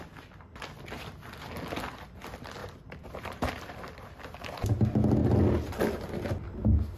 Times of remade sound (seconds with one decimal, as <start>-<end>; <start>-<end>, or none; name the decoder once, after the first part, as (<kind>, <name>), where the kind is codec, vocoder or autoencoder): 2.6-3.5 (vocoder, BigVGAN v2)